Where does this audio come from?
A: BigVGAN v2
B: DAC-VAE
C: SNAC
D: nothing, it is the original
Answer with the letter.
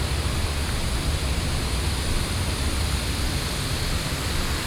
D